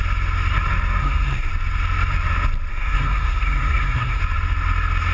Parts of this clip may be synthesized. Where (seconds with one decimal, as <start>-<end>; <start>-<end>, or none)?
1.0-1.5; 2.7-4.2